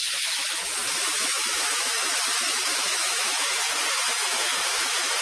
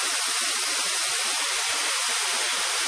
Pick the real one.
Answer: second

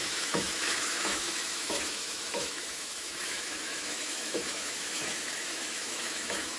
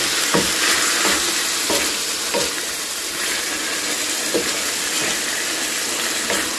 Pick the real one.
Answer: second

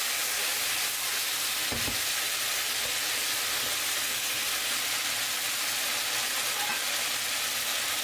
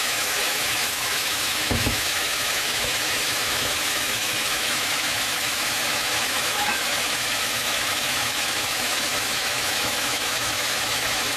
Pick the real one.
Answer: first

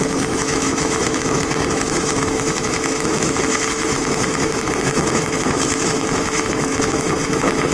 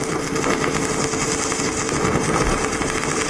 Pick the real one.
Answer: second